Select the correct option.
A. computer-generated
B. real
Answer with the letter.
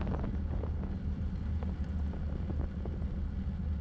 B